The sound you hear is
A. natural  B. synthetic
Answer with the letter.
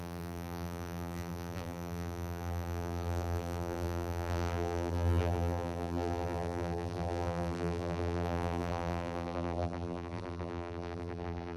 B